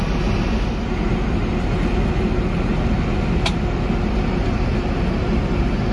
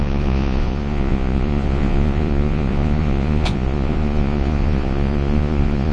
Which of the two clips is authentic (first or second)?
first